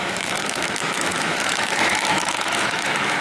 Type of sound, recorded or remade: remade